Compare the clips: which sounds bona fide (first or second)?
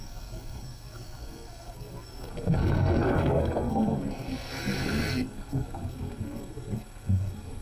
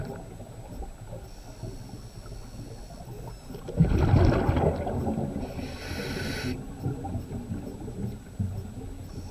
second